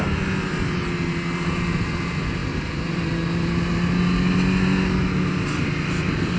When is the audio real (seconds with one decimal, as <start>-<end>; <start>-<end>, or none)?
0.0-6.4